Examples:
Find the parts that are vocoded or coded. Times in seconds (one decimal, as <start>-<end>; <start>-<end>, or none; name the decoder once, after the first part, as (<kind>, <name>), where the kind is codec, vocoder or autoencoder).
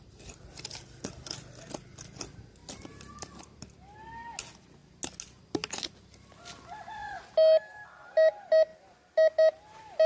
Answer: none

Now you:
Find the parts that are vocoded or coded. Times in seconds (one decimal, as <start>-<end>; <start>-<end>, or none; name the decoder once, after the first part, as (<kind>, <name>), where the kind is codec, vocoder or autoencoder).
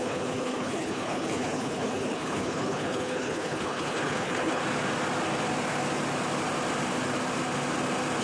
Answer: 0.0-4.6 (codec, HILCodec)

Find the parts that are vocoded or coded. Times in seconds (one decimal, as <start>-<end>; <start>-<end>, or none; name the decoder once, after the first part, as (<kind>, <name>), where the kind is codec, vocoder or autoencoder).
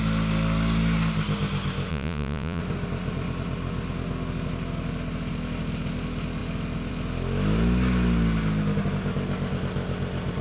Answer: 1.9-2.6 (vocoder, Vocos)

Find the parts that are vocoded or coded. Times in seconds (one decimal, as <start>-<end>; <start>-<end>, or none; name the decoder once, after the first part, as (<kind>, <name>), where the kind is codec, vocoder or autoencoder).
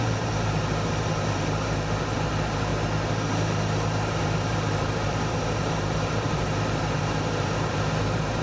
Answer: 0.0-2.7 (vocoder, BigVGAN v2); 4.2-8.4